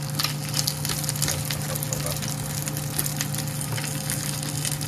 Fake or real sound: real